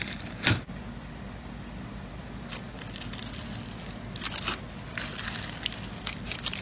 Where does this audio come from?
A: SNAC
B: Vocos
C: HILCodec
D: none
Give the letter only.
D